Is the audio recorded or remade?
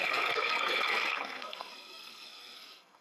remade